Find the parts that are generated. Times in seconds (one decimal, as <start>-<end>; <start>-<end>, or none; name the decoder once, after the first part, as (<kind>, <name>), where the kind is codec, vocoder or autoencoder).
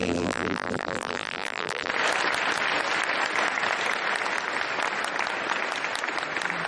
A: 0.0-1.9 (vocoder, BigVGAN v2)